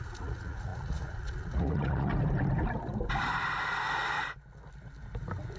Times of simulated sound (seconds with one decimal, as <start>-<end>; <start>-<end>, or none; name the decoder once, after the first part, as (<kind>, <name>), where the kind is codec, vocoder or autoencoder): 0.0-2.1 (vocoder, Vocos)